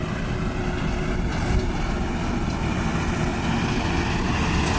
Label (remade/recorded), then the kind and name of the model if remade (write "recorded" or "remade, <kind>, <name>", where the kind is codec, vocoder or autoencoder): recorded